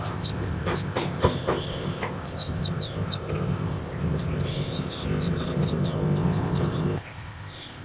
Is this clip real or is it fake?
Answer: fake